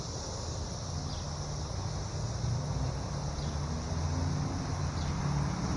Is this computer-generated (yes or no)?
no